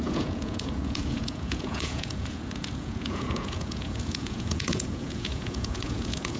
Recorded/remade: remade